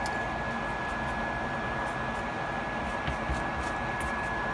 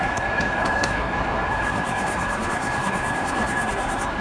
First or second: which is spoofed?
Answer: second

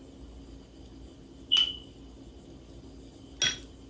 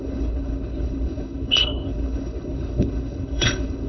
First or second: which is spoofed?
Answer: second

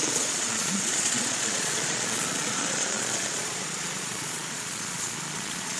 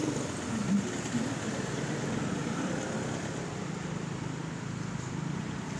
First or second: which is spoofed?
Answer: first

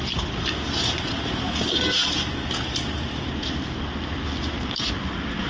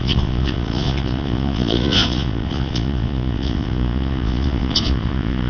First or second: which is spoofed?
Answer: second